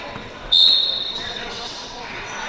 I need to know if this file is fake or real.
fake